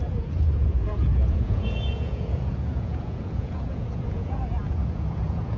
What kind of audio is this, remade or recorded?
remade